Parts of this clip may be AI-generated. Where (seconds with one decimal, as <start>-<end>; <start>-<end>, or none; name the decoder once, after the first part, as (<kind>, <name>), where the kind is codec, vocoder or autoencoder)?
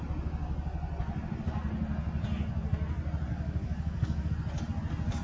3.3-4.3 (codec, DAC)